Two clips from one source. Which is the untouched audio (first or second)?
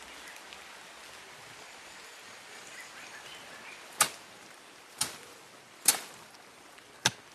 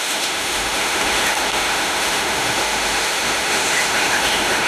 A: first